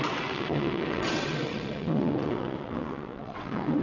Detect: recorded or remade remade